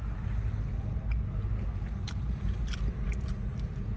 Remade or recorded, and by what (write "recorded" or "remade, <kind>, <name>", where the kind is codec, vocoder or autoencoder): recorded